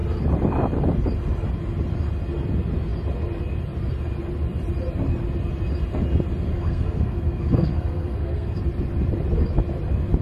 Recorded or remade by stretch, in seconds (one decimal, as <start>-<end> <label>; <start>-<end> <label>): 0.0-6.5 recorded; 6.5-8.6 remade; 8.6-10.2 recorded